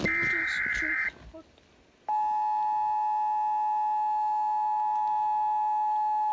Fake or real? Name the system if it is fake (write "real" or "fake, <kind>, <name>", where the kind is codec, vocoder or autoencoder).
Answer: real